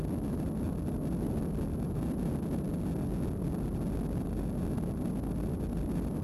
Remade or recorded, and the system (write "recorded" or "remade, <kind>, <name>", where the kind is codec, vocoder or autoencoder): recorded